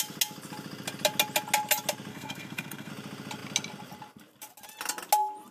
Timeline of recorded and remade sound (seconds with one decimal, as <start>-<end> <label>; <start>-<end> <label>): 0.0-2.1 recorded; 2.1-2.9 remade; 2.9-5.5 recorded